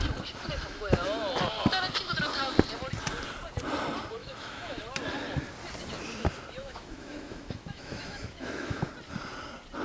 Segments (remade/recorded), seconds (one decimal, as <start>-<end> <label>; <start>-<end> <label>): 0.0-4.2 recorded; 4.2-4.8 remade; 4.8-6.6 recorded; 6.6-8.9 remade; 8.9-9.8 recorded